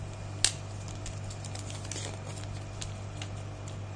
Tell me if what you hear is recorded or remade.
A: recorded